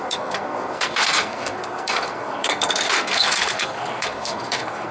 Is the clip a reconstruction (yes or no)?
yes